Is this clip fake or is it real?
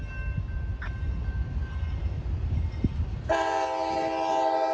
real